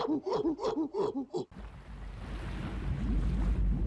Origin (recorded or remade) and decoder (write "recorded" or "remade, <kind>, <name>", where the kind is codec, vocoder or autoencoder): recorded